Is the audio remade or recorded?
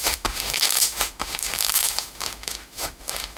remade